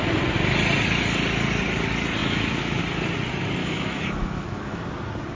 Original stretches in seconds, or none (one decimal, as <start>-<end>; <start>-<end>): 0.0-2.2; 2.8-3.6; 4.8-5.3